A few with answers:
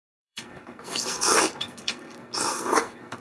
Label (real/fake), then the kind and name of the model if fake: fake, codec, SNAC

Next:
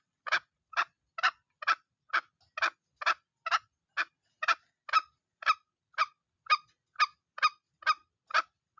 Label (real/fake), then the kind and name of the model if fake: real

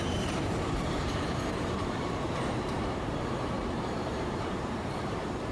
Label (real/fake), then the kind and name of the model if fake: fake, vocoder, BigVGAN v2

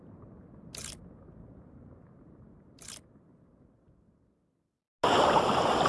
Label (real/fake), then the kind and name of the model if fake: real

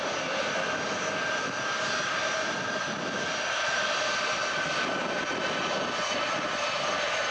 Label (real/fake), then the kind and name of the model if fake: fake, vocoder, BigVGAN v2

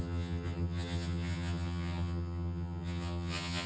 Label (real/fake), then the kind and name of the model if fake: fake, vocoder, HiFi-GAN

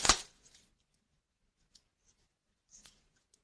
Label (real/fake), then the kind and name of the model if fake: fake, vocoder, Vocos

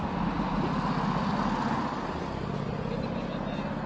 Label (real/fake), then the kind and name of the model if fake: real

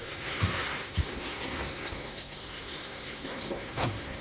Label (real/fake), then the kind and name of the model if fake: fake, codec, SNAC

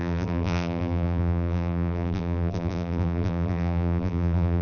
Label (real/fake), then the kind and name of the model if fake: fake, vocoder, BigVGAN v2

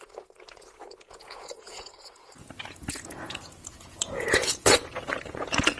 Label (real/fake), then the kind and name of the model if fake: fake, vocoder, Vocos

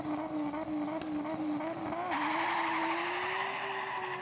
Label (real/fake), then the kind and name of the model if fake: real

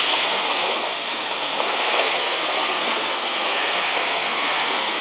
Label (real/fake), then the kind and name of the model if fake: fake, codec, SNAC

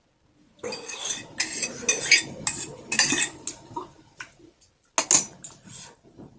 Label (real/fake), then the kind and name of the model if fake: real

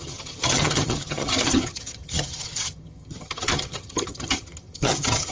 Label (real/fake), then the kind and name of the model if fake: fake, vocoder, HiFi-GAN